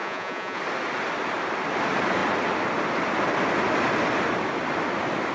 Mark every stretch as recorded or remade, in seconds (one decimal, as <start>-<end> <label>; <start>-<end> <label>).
0.0-0.6 remade; 0.6-5.3 recorded